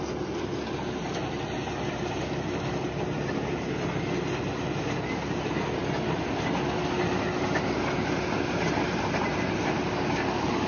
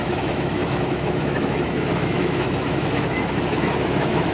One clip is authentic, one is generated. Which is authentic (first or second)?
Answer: first